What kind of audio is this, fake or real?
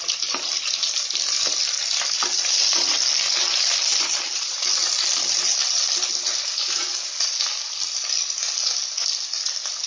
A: real